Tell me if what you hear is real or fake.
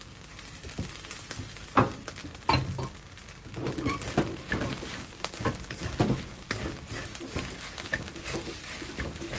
real